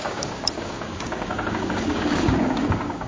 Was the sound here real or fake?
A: fake